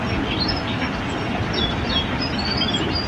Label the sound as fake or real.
real